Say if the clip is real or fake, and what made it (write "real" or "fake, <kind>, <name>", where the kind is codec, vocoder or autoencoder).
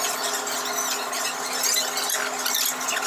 real